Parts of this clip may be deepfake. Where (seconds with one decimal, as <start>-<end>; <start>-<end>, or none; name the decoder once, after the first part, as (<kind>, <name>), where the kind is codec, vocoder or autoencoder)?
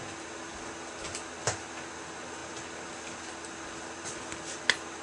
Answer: none